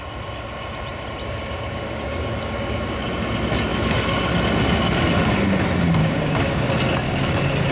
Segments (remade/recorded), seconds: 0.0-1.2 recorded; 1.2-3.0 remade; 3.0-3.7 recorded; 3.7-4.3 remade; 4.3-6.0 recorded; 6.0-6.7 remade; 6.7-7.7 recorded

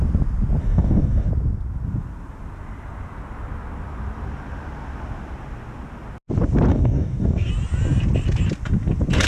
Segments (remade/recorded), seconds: 0.0-0.6 recorded; 0.6-1.3 remade; 1.3-6.7 recorded; 6.7-7.5 remade; 7.5-9.3 recorded

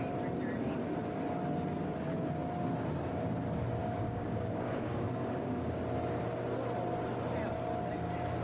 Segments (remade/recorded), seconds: 0.0-3.8 recorded; 3.8-5.8 remade; 5.8-8.4 recorded

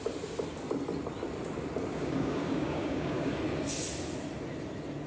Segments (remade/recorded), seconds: 0.0-1.9 recorded; 1.9-3.3 remade; 3.3-5.1 recorded

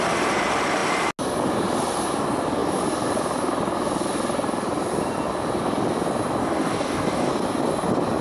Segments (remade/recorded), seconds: 0.0-6.4 recorded; 6.4-7.3 remade; 7.3-8.2 recorded